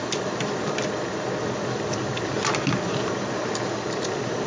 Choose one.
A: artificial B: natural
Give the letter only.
B